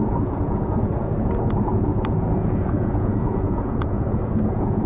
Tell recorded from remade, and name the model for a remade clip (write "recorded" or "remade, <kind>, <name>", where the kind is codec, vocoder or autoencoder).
remade, vocoder, Vocos